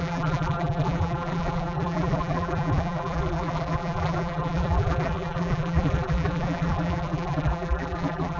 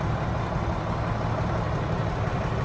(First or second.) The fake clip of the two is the first